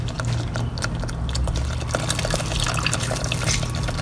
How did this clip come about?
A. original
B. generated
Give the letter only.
A